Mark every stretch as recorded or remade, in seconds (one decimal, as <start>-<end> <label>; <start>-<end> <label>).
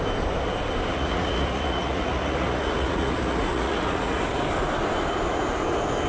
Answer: 0.0-0.9 recorded; 0.9-4.2 remade; 4.2-6.1 recorded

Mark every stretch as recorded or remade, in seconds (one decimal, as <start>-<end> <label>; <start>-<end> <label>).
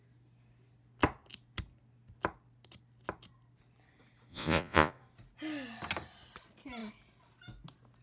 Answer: 0.0-4.3 recorded; 4.3-4.9 remade; 4.9-8.0 recorded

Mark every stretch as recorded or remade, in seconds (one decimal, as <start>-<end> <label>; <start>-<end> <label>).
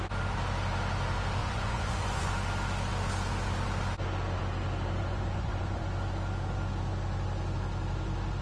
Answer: 0.0-1.4 recorded; 1.4-2.3 remade; 2.3-5.0 recorded; 5.0-5.8 remade; 5.8-8.4 recorded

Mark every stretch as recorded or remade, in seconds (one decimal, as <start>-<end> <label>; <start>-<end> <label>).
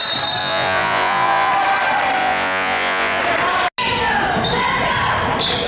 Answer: 0.0-0.4 recorded; 0.4-1.5 remade; 1.5-2.2 recorded; 2.2-3.2 remade; 3.2-5.7 recorded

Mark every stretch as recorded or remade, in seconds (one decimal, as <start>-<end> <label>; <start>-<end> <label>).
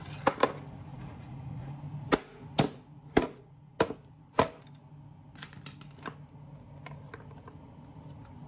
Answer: 0.0-0.9 recorded; 0.9-1.8 remade; 1.8-3.2 recorded; 3.2-3.8 remade; 3.8-8.5 recorded